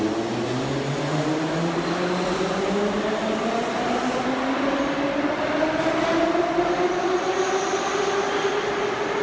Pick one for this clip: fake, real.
real